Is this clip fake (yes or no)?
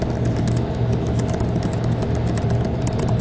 no